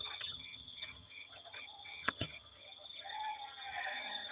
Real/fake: fake